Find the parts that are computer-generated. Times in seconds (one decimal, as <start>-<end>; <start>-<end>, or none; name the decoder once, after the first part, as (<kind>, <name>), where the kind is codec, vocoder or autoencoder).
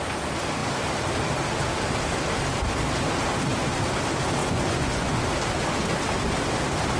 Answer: 4.4-5.2 (vocoder, Vocos)